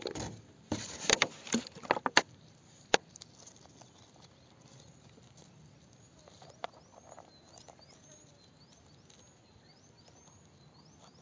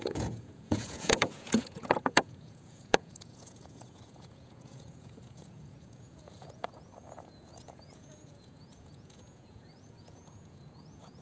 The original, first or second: first